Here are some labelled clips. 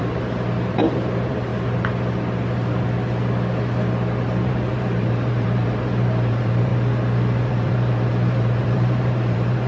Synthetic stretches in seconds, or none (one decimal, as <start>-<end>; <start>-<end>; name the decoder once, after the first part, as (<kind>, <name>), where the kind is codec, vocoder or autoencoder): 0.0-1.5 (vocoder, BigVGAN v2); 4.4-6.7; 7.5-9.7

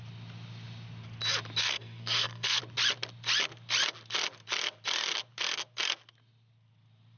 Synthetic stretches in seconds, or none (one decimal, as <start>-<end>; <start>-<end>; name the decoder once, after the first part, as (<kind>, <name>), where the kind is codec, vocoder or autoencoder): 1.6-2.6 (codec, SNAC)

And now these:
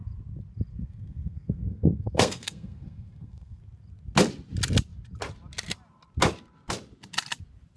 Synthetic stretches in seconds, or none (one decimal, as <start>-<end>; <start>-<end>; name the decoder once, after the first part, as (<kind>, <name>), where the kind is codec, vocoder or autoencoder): 0.7-3.6 (codec, SNAC)

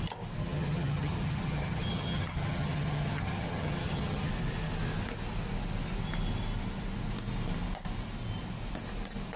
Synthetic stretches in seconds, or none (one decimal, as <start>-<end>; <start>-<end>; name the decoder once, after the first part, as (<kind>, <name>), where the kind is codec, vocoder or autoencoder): 0.4-4.3 (vocoder, HiFi-GAN)

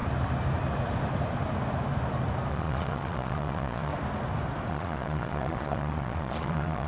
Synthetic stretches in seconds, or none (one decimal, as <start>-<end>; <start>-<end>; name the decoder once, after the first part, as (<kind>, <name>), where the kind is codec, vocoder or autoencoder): 2.5-3.9 (vocoder, Vocos); 4.7-6.9